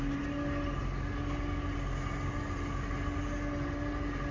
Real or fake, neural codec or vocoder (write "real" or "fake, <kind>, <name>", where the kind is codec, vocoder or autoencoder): real